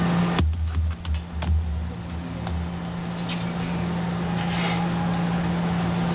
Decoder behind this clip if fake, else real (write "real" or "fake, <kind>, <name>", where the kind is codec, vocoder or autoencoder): real